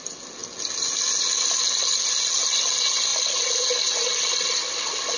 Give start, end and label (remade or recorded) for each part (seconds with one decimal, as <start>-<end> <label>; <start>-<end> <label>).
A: 0.0-5.2 recorded